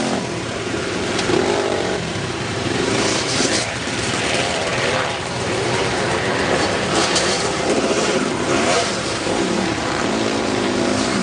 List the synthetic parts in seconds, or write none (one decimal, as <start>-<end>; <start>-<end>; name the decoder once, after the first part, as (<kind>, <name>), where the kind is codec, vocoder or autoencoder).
0.0-11.2 (vocoder, BigVGAN v2)